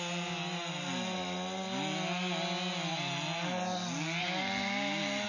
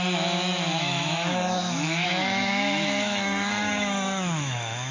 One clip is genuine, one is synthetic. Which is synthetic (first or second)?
second